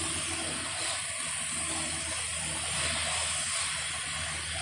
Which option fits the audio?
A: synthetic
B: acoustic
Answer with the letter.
B